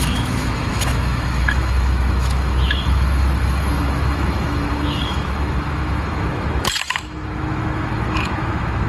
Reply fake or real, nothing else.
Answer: fake